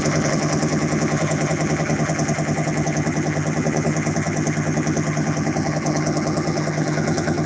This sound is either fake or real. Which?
fake